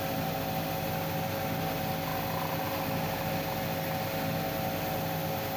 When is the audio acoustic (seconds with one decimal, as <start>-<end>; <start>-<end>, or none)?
0.0-5.6